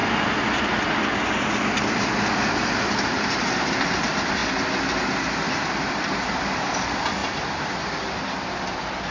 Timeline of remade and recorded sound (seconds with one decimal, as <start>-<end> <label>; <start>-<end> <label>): 0.0-3.3 recorded; 3.3-4.4 remade; 4.4-5.9 recorded; 5.9-9.1 remade